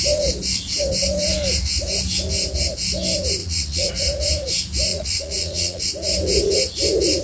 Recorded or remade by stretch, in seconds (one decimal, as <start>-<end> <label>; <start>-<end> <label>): 0.0-3.4 recorded; 3.4-3.9 remade; 3.9-4.9 recorded; 4.9-5.9 remade; 5.9-7.2 recorded